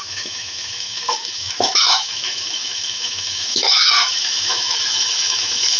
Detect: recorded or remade remade